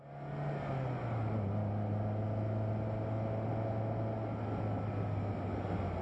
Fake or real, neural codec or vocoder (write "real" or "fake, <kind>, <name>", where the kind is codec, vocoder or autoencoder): real